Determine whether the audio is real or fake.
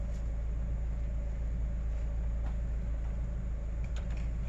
fake